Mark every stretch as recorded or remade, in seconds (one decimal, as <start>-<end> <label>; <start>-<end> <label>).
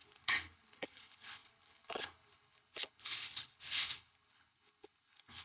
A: 0.0-5.4 remade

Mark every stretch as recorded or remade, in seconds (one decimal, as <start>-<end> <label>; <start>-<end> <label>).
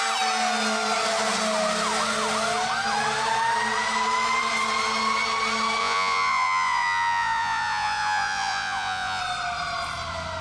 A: 0.0-5.8 recorded; 5.8-9.2 remade; 9.2-10.4 recorded